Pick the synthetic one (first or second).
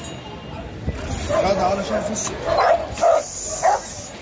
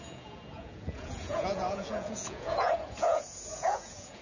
second